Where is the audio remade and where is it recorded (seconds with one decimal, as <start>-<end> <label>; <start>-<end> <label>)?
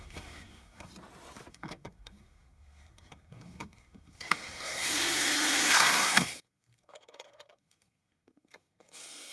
0.0-0.9 remade; 0.9-1.5 recorded; 1.5-9.3 remade